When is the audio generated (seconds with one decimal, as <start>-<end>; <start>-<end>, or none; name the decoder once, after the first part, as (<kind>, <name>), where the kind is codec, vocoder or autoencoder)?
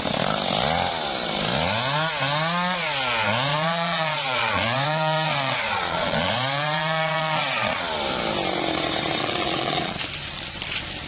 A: 3.5-7.8 (vocoder, Vocos); 9.2-10.1